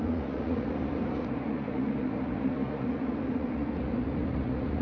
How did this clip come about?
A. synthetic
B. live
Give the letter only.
A